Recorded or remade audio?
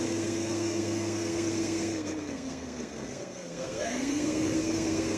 remade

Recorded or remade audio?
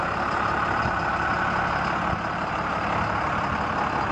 recorded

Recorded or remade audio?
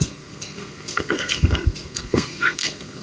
remade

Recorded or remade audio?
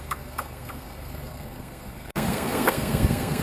remade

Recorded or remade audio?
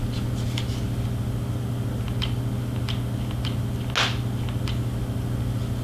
recorded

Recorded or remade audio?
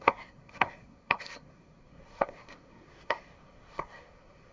remade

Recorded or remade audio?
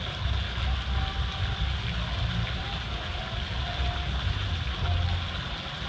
recorded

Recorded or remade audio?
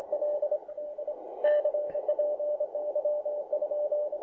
recorded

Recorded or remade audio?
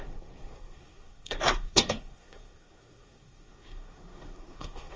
remade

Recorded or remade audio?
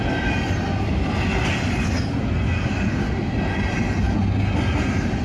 recorded